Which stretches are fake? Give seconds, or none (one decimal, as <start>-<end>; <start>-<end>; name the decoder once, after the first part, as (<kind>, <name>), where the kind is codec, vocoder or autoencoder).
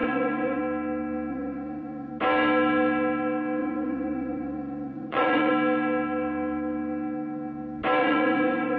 0.0-0.6 (vocoder, Vocos); 1.3-2.1; 3.6-5.5; 8.0-8.8